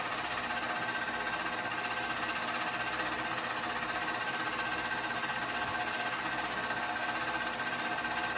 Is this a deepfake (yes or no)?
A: no